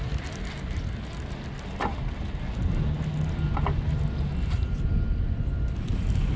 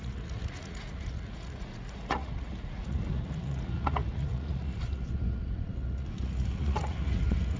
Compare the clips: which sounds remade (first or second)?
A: second